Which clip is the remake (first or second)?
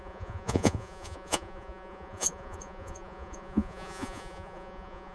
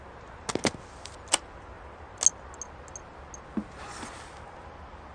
first